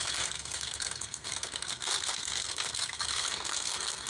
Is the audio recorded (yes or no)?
no